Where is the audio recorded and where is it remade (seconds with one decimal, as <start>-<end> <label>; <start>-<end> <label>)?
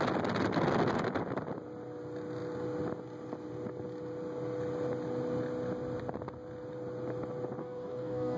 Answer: 0.0-7.6 recorded; 7.6-8.4 remade